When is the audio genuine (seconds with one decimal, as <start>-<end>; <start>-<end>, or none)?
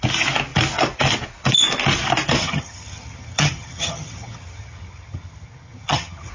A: 0.0-2.4